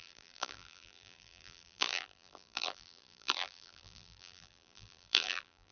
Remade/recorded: remade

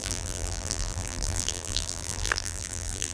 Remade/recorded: remade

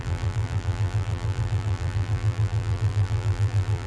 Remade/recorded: remade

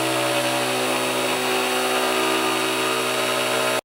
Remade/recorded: recorded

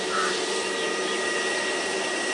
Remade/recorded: remade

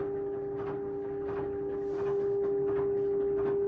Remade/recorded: recorded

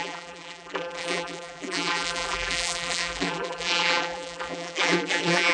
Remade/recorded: remade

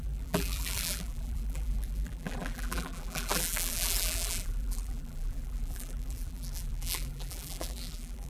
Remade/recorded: remade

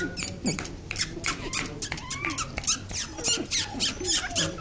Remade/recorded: recorded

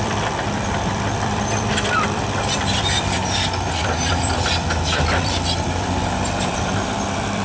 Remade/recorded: remade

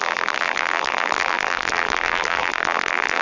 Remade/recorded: remade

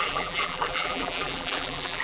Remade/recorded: remade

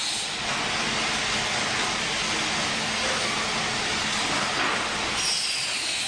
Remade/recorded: recorded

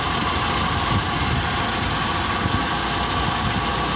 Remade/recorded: recorded